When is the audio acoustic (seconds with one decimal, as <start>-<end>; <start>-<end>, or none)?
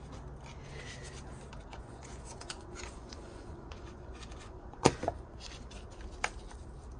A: 0.0-1.7; 5.6-7.0